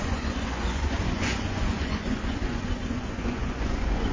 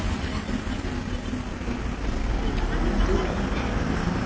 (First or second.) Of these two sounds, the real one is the second